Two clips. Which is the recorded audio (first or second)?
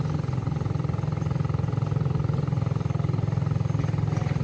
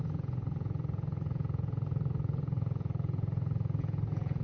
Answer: first